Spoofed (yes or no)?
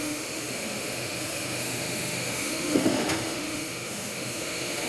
yes